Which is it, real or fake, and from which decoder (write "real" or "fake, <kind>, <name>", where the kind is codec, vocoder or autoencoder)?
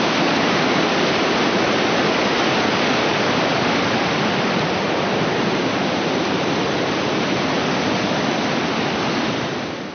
fake, vocoder, BigVGAN v2